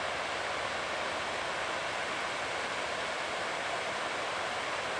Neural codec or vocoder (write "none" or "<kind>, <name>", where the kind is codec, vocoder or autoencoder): vocoder, BigVGAN v2